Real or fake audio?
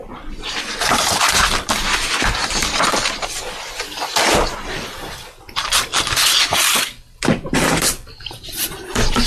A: fake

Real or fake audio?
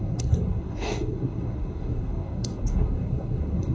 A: fake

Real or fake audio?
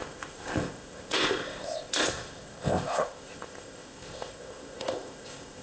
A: fake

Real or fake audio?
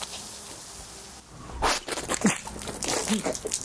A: real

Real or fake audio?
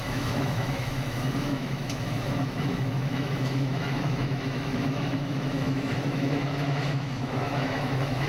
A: fake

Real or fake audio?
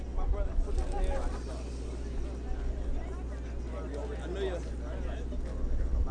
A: real